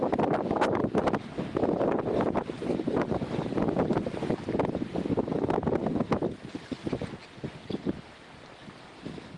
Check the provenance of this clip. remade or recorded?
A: recorded